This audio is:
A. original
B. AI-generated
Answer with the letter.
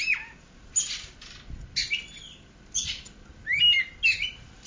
A